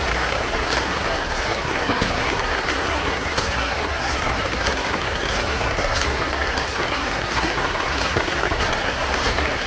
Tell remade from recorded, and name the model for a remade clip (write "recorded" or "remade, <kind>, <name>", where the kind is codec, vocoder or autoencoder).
remade, codec, SNAC